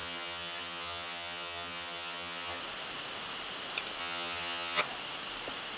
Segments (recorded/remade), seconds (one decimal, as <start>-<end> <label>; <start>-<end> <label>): 0.0-2.6 remade; 2.6-4.0 recorded; 4.0-4.8 remade; 4.8-5.8 recorded